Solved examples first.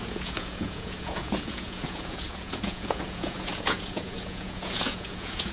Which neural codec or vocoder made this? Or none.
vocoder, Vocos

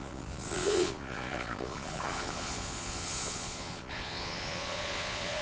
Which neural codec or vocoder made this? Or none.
vocoder, Vocos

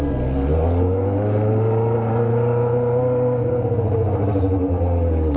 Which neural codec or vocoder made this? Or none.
none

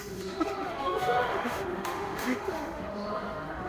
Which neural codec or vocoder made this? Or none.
autoencoder, DAC-VAE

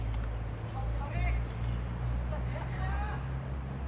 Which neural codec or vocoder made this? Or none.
none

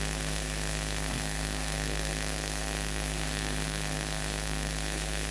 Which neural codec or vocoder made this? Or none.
codec, SNAC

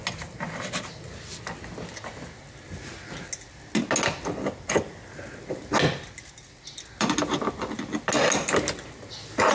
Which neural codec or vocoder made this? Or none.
none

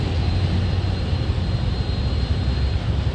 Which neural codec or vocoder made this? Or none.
none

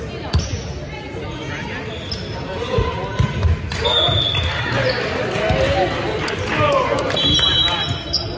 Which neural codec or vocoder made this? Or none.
none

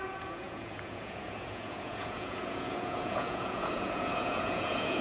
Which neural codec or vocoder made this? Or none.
vocoder, Vocos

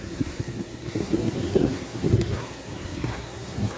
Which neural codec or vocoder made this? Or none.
codec, SNAC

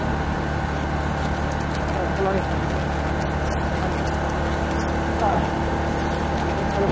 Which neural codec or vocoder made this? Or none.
none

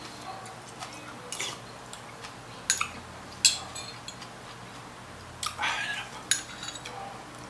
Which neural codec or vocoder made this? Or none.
none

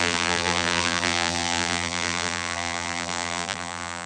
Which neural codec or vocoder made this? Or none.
vocoder, BigVGAN v2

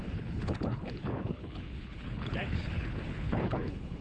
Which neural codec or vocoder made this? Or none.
codec, HILCodec